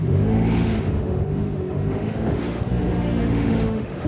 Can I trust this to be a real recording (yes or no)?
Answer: no